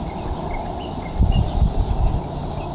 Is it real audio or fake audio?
real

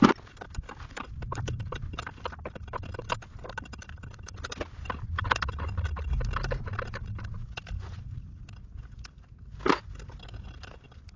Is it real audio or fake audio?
real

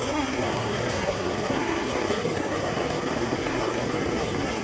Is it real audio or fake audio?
fake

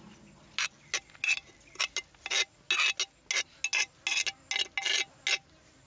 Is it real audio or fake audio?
real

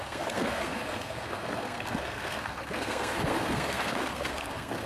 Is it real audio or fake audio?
fake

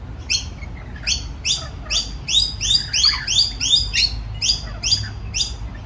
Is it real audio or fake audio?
real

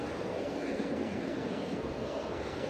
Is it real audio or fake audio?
fake